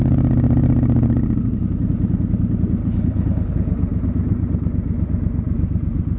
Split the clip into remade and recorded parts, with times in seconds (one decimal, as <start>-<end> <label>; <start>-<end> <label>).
0.0-2.8 recorded; 2.8-3.5 remade; 3.5-6.2 recorded